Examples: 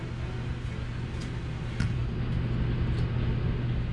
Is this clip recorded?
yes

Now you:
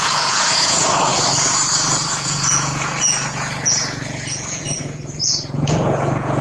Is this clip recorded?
no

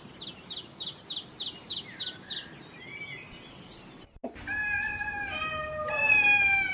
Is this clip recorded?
yes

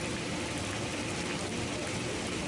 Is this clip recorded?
yes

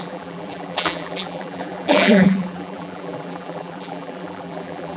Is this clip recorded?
no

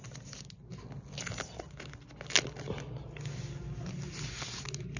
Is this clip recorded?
yes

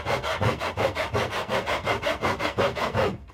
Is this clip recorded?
no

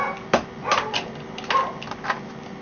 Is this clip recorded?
yes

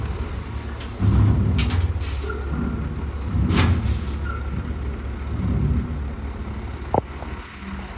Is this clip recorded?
yes